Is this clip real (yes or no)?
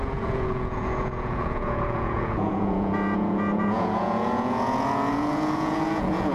no